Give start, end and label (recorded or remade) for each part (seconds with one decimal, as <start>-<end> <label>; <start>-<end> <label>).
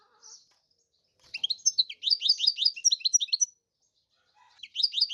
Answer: 0.0-5.1 recorded